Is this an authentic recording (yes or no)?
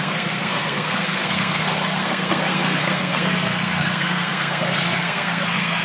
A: no